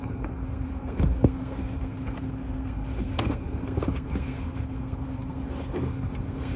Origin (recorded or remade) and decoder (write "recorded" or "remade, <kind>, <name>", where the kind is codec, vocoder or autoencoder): remade, codec, SNAC